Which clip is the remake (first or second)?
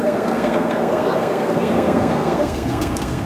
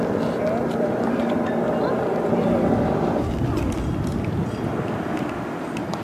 first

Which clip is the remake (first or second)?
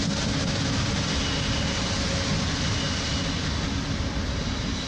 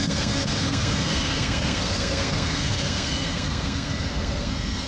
second